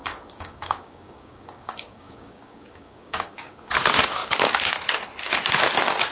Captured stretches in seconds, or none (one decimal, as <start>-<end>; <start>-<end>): 3.7-6.1